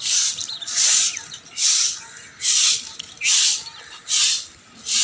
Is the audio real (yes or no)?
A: yes